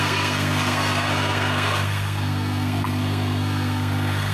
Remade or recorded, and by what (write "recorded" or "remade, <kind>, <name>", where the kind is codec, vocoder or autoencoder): remade, codec, SNAC